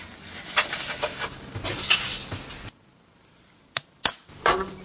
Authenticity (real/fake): real